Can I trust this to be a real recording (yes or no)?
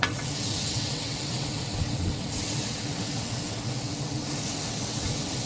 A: no